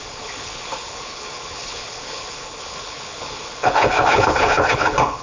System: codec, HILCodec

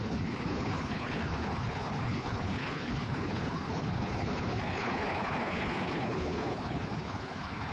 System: codec, HILCodec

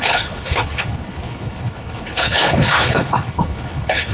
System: codec, HILCodec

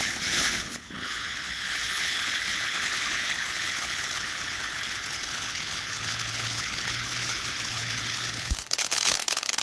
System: codec, HILCodec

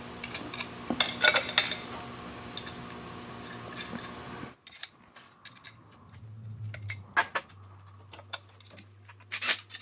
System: none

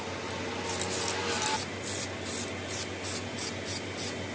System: none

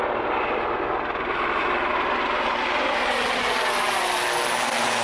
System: none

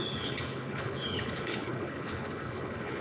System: codec, HILCodec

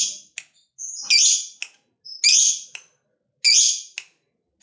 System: none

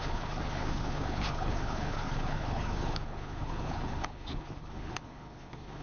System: codec, HILCodec